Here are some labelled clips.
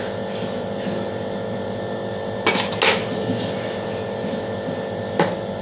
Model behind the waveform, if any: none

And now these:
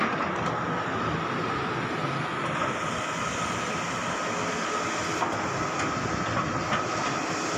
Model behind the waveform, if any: none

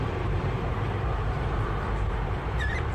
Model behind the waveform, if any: vocoder, BigVGAN v2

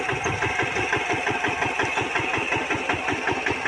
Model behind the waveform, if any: none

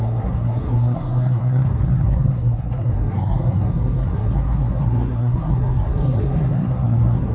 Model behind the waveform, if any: codec, SNAC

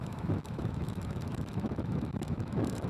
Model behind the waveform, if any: autoencoder, DAC-VAE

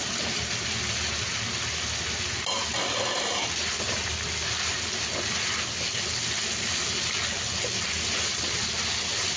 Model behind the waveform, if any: none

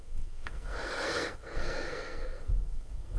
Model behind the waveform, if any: codec, SNAC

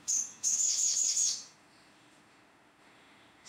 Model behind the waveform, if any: autoencoder, DAC-VAE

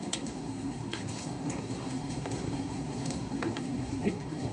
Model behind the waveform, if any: codec, SNAC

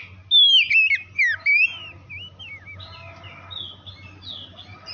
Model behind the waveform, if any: none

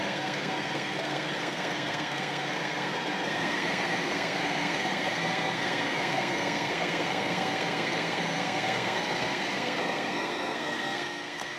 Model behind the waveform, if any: codec, SNAC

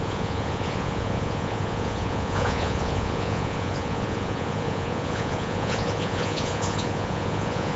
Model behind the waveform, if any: vocoder, Vocos